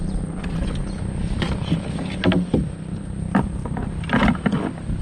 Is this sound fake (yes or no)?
no